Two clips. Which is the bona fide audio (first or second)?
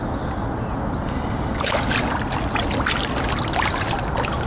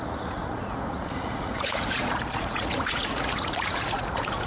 first